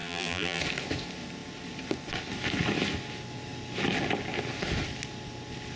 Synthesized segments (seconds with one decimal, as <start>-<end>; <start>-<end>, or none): 0.0-0.6